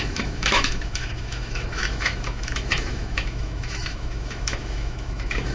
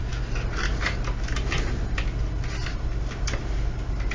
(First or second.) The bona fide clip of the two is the second